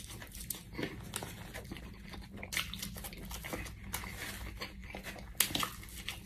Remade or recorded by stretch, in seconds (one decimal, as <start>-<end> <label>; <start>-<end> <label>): 0.0-6.3 recorded